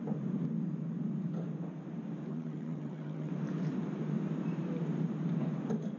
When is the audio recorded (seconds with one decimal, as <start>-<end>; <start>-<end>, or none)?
0.0-2.3; 3.3-6.0